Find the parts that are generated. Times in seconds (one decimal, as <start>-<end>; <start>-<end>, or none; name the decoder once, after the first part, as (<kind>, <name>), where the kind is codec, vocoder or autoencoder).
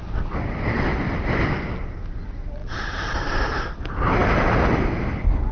0.9-1.4 (vocoder, BigVGAN v2); 2.6-3.8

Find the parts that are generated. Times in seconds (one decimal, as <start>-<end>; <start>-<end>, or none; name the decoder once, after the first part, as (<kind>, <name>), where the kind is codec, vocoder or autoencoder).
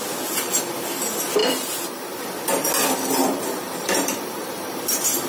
1.4-2.2 (vocoder, BigVGAN v2); 3.2-4.8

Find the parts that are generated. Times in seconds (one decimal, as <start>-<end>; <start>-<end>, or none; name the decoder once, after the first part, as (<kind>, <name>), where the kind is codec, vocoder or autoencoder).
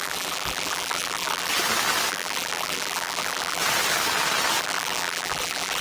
0.0-1.5 (vocoder, BigVGAN v2); 2.1-3.6; 4.6-5.8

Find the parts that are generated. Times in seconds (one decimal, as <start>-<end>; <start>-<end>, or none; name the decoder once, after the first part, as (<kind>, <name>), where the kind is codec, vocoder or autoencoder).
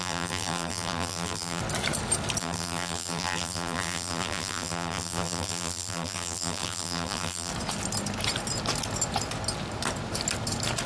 0.0-1.6 (vocoder, BigVGAN v2); 2.4-7.5